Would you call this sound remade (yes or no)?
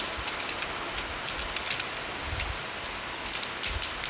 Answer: no